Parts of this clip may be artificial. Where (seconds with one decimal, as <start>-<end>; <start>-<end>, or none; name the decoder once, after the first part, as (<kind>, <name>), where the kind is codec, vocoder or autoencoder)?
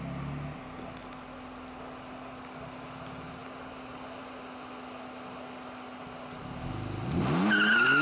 none